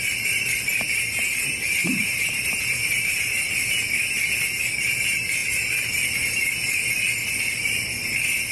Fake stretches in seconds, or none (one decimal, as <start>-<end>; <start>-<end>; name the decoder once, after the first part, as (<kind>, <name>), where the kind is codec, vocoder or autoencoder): 1.8-3.7 (vocoder, BigVGAN v2)